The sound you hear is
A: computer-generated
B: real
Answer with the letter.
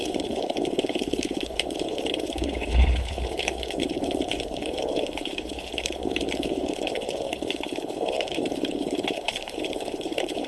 A